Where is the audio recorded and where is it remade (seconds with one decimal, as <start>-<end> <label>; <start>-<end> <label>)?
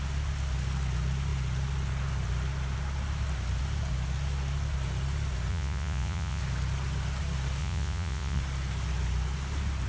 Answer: 0.0-5.5 recorded; 5.5-6.4 remade; 6.4-7.6 recorded; 7.6-8.4 remade; 8.4-9.9 recorded